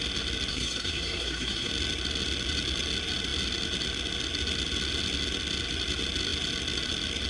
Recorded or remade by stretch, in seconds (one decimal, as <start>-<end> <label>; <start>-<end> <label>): 0.0-0.5 recorded; 0.5-1.7 remade; 1.7-7.3 recorded